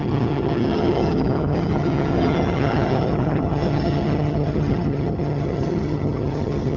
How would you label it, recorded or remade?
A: remade